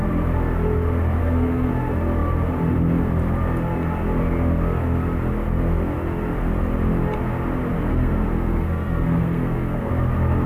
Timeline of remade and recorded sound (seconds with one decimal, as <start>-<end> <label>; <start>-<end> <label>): 0.0-1.2 recorded; 1.2-1.7 remade; 1.7-7.9 recorded; 7.9-9.9 remade; 9.9-10.5 recorded